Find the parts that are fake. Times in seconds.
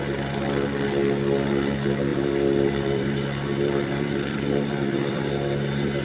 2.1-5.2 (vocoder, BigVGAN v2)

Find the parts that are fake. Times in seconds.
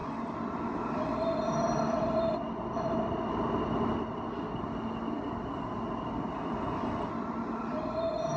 none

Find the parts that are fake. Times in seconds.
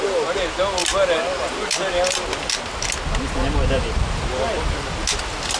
none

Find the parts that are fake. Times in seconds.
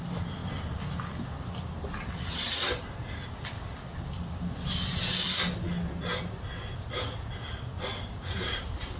0.0-0.4 (vocoder, BigVGAN v2); 2.3-3.0; 8.0-9.0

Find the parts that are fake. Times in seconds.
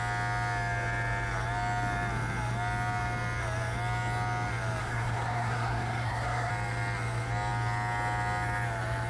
4.8-6.5 (codec, SNAC)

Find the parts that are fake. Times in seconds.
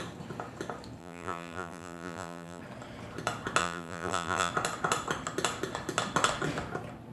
1.0-2.6 (vocoder, BigVGAN v2); 3.6-4.5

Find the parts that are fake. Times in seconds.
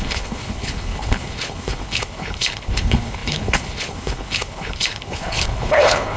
0.0-6.2 (codec, HILCodec)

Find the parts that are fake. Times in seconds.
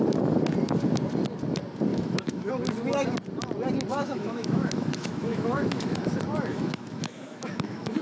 1.9-2.5 (autoencoder, DAC-VAE); 3.9-6.0; 6.5-8.0